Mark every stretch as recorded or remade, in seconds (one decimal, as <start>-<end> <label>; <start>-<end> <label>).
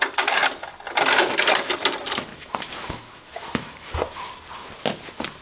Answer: 0.0-2.3 recorded; 2.3-3.9 remade; 3.9-5.4 recorded